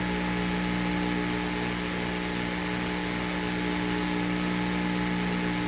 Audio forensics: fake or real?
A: real